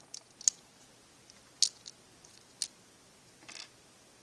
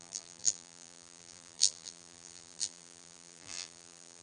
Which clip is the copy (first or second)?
second